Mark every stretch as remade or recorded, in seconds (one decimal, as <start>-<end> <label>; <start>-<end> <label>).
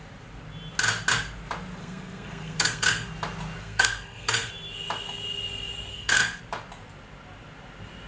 0.0-1.8 recorded; 1.8-3.1 remade; 3.1-3.6 recorded; 3.6-4.5 remade; 4.5-5.9 recorded; 5.9-6.4 remade; 6.4-8.1 recorded